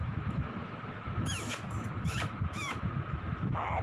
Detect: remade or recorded remade